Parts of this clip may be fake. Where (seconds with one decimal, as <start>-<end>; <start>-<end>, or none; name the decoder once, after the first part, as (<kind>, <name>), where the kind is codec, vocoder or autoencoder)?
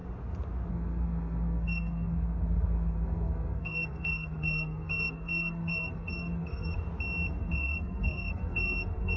0.7-6.7 (codec, SNAC); 7.4-9.2